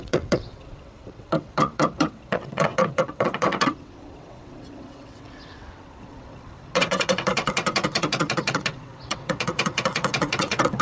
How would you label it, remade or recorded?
remade